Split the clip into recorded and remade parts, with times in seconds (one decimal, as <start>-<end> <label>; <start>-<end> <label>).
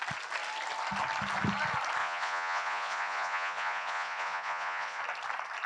0.0-2.0 recorded; 2.0-5.0 remade; 5.0-5.7 recorded